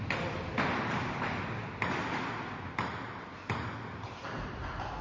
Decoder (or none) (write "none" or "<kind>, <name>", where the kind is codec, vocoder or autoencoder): none